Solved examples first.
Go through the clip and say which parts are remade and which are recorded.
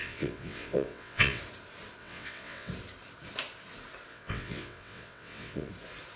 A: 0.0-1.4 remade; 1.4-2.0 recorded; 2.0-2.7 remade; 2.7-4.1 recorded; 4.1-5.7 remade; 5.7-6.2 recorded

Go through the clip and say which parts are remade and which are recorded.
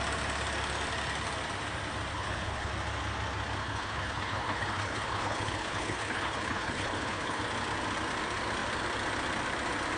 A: 0.0-2.1 recorded; 2.1-2.7 remade; 2.7-3.6 recorded; 3.6-7.4 remade; 7.4-10.0 recorded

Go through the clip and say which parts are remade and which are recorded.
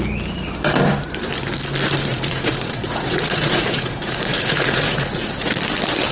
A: 0.0-2.1 recorded; 2.1-5.5 remade; 5.5-6.1 recorded